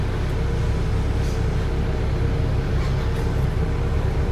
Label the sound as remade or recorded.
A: recorded